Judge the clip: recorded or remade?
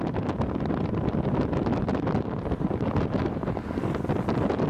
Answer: recorded